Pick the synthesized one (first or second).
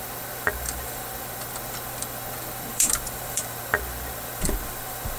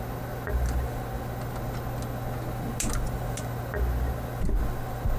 first